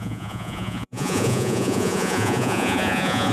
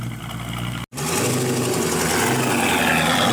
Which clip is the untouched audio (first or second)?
second